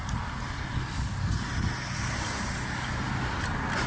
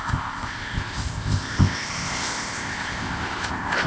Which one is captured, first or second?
first